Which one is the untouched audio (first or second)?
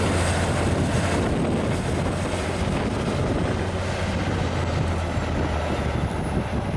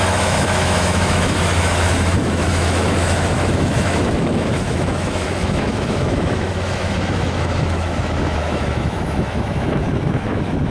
first